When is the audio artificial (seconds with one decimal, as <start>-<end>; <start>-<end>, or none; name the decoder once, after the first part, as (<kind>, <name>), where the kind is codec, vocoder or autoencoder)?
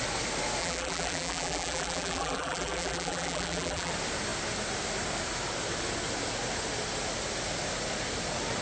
0.6-3.9 (vocoder, BigVGAN v2)